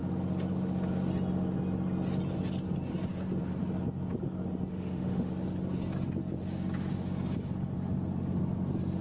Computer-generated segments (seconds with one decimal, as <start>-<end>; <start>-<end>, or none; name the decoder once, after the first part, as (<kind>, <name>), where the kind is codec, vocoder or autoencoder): 4.7-5.3 (autoencoder, DAC-VAE)